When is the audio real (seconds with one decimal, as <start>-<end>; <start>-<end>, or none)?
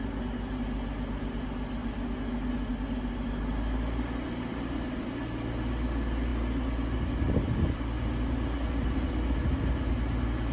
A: 0.0-10.5